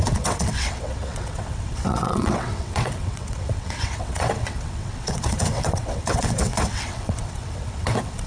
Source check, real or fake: fake